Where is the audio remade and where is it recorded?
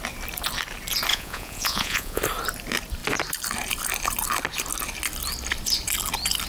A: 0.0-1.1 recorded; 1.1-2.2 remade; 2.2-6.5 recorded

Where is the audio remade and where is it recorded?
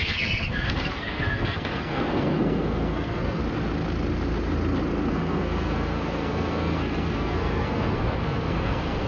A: 0.0-3.4 remade; 3.4-5.1 recorded; 5.1-9.1 remade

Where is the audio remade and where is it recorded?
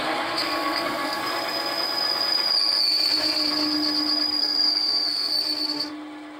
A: 0.0-1.2 remade; 1.2-4.4 recorded; 4.4-5.3 remade; 5.3-6.4 recorded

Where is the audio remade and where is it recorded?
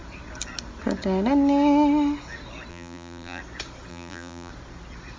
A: 0.0-2.7 recorded; 2.7-3.4 remade; 3.4-3.9 recorded; 3.9-4.5 remade; 4.5-5.2 recorded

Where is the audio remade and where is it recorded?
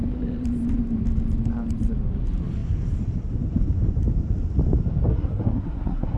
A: 0.0-5.1 recorded; 5.1-6.2 remade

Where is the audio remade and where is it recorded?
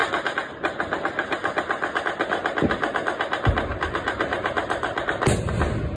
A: 0.0-3.7 recorded; 3.7-5.0 remade; 5.0-6.0 recorded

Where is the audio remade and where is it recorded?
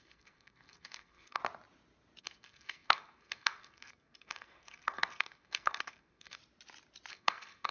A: 0.0-1.4 remade; 1.4-2.2 recorded; 2.2-6.4 remade; 6.4-7.1 recorded; 7.1-7.7 remade